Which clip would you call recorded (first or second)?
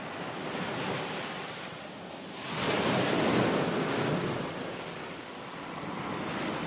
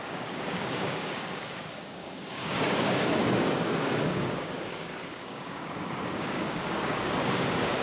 first